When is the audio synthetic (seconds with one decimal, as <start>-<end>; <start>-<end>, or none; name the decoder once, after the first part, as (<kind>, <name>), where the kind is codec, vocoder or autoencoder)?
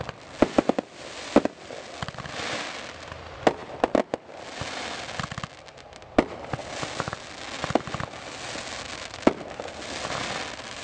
none